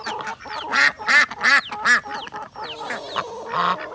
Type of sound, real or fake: real